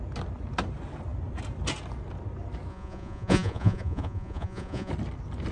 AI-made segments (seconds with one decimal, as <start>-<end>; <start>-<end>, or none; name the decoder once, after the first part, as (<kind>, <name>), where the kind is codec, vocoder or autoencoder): 2.7-4.9 (vocoder, Vocos)